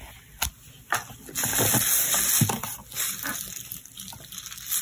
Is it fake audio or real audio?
real